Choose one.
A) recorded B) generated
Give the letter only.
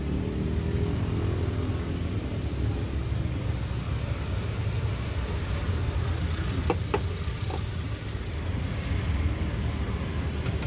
A